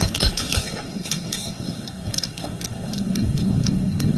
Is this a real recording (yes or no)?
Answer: no